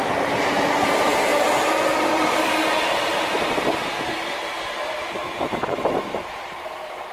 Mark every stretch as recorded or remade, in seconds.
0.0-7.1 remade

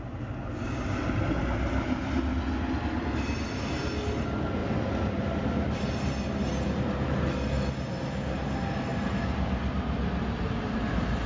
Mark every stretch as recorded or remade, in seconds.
0.0-11.3 recorded